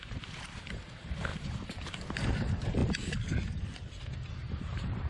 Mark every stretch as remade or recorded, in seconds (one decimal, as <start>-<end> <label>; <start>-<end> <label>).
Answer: 0.0-2.8 remade; 2.8-4.3 recorded; 4.3-5.1 remade